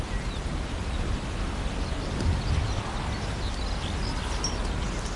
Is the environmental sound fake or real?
real